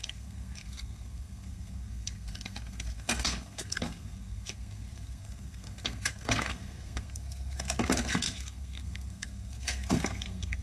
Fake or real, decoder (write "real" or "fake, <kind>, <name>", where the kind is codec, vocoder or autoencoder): fake, codec, SNAC